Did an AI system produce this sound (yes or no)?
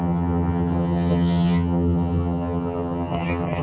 yes